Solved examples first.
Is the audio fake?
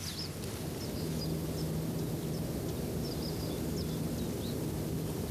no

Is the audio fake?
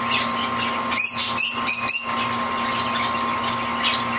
no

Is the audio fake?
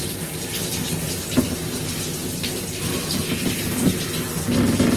no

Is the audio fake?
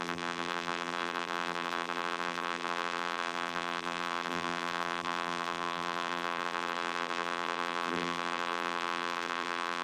yes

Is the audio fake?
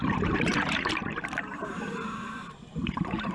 yes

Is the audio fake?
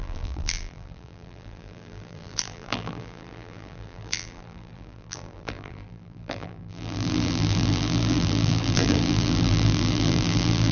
yes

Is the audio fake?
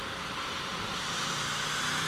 no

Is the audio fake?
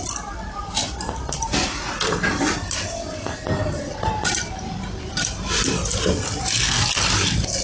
yes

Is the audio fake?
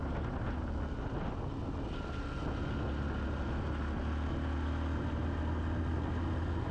no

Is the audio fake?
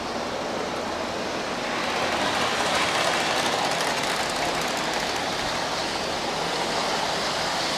no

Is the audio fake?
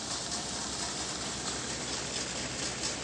no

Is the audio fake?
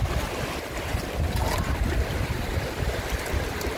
yes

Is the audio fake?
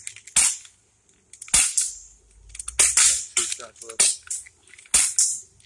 no